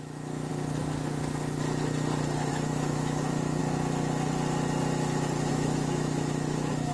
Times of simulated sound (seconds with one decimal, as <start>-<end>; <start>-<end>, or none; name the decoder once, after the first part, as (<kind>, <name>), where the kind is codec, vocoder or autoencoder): 0.0-0.5 (autoencoder, DAC-VAE); 2.5-3.6; 5.5-6.9